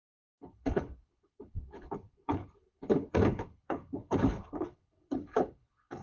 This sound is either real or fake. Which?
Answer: fake